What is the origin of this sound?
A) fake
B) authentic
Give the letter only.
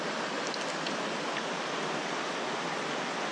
B